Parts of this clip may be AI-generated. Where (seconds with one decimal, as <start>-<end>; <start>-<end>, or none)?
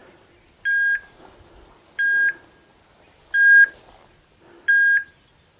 none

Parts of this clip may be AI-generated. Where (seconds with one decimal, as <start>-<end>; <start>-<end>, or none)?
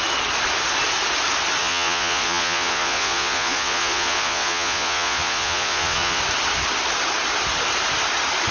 1.6-6.2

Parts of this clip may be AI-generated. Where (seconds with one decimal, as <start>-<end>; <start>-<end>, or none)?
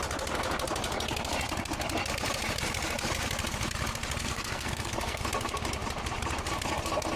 4.2-5.2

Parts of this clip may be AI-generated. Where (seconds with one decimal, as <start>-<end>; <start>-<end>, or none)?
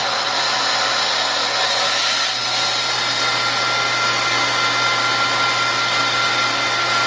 none